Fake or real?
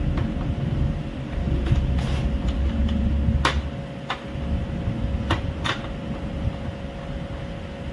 real